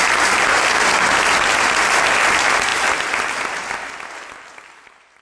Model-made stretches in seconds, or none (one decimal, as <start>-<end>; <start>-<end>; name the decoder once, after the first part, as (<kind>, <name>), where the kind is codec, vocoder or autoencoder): none